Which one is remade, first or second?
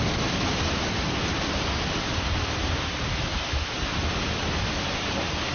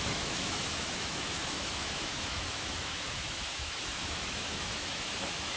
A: second